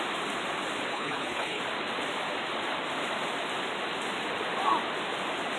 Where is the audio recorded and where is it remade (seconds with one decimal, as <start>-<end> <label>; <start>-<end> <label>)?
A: 0.0-0.9 recorded; 0.9-1.6 remade; 1.6-5.6 recorded